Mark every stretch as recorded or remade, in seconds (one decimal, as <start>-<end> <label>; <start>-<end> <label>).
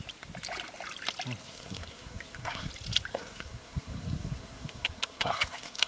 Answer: 0.0-1.4 recorded; 1.4-2.7 remade; 2.7-3.1 recorded; 3.1-5.9 remade